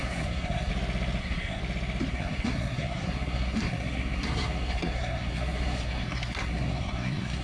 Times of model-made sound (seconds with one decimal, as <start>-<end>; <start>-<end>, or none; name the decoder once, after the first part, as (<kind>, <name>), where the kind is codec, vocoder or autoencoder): 0.0-0.7 (codec, SNAC); 1.2-1.6; 2.1-7.4

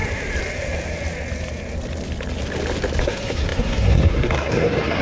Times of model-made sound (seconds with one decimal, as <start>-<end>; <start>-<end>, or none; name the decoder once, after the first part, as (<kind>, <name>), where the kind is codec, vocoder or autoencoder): 3.0-5.0 (codec, SNAC)

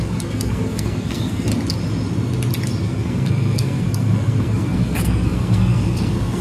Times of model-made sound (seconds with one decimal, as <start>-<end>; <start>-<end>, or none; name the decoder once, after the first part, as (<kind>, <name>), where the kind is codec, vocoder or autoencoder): 0.0-1.5 (codec, SNAC); 2.8-6.4

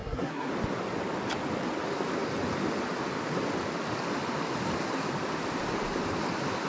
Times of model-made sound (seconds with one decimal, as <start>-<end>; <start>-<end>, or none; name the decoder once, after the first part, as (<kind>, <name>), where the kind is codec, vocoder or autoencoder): 0.0-0.5 (codec, SNAC)

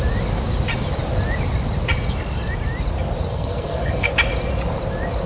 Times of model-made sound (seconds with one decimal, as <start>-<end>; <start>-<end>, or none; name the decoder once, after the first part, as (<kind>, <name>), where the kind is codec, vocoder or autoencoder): 3.3-4.1 (codec, SNAC)

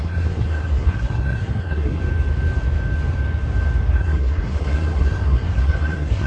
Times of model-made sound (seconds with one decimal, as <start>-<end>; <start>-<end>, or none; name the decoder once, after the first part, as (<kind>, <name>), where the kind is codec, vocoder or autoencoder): 0.0-2.0 (codec, SNAC); 3.9-6.3